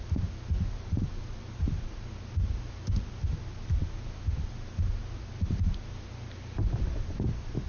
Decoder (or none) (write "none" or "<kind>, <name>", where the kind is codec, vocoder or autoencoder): none